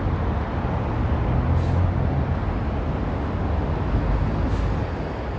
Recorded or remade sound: recorded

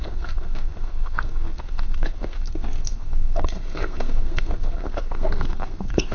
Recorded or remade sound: remade